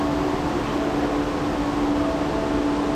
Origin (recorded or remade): recorded